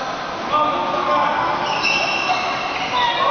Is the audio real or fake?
real